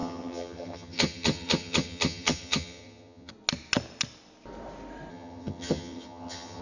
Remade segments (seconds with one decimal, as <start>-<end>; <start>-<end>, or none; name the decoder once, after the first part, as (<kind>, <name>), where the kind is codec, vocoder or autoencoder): 0.0-3.3 (vocoder, HiFi-GAN); 5.1-6.6

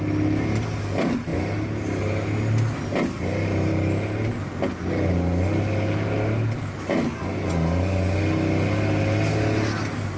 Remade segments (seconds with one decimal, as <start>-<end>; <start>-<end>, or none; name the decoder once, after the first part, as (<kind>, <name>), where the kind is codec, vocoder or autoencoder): none

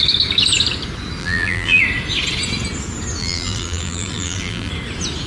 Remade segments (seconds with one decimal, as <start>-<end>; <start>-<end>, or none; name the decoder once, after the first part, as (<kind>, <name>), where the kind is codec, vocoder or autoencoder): 1.2-1.8 (vocoder, BigVGAN v2); 3.2-4.7

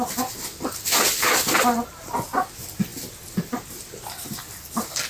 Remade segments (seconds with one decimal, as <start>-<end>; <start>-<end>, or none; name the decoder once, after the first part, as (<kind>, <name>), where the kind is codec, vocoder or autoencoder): none